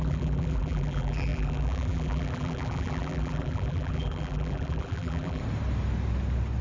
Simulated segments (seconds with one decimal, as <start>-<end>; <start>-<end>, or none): 0.0-5.4